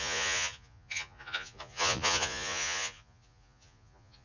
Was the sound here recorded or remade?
remade